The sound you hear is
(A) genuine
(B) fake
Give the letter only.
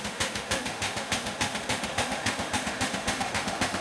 B